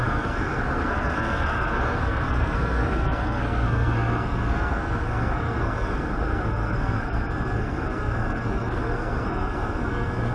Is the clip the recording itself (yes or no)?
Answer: no